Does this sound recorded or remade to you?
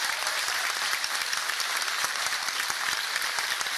remade